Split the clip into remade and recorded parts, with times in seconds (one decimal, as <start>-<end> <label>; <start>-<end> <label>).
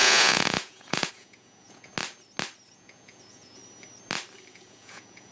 0.0-1.9 remade; 1.9-2.7 recorded; 2.7-3.6 remade; 3.6-4.5 recorded; 4.5-5.3 remade